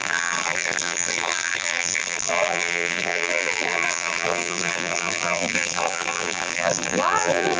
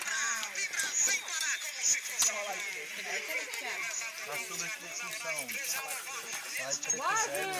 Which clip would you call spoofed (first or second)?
first